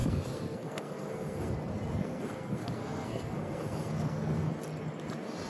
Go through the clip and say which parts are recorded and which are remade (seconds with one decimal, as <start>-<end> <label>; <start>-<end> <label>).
0.0-1.5 remade; 1.5-2.0 recorded; 2.0-4.5 remade; 4.5-5.5 recorded